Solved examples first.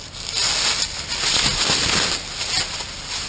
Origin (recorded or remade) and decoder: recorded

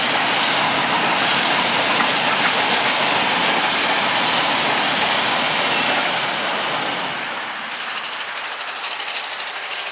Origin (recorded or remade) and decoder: recorded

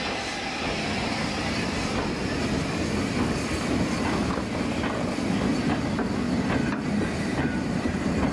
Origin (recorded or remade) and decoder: recorded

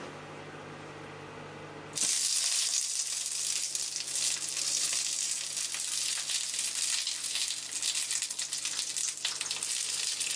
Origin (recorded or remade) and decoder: recorded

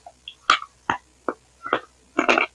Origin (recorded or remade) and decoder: recorded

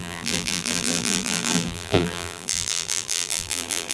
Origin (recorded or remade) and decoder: remade, vocoder, BigVGAN v2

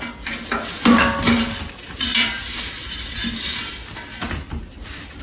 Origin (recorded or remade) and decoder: recorded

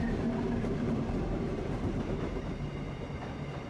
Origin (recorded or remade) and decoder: remade, vocoder, BigVGAN v2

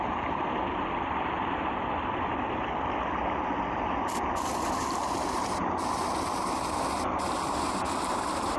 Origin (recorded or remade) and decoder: recorded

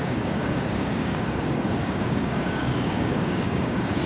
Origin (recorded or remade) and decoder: remade, codec, DAC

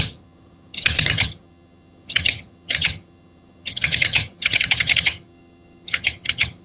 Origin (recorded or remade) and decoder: remade, vocoder, HiFi-GAN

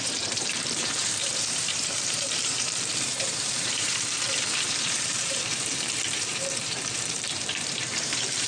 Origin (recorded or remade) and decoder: remade, vocoder, BigVGAN v2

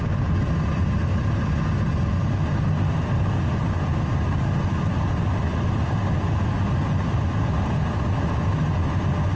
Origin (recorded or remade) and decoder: recorded